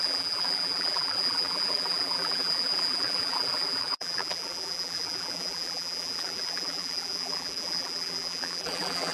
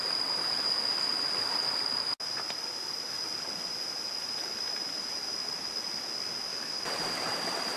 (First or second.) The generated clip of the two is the first